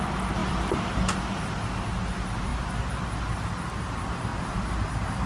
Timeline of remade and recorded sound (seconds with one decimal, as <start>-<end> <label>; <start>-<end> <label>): 0.0-0.4 recorded; 0.4-0.9 remade; 0.9-5.3 recorded